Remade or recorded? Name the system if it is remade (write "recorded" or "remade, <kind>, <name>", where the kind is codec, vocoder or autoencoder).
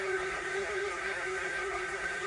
remade, codec, SNAC